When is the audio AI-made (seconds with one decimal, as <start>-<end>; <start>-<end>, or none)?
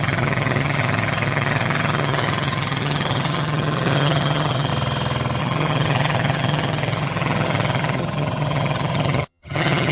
0.0-4.7; 5.4-9.9